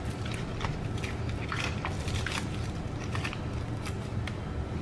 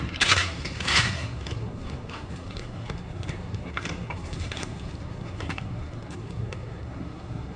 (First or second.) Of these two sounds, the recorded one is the first